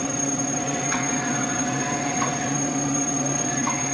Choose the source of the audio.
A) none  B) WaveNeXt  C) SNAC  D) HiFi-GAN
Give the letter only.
B